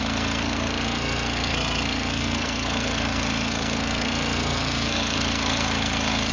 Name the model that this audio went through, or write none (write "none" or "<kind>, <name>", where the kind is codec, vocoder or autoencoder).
codec, SNAC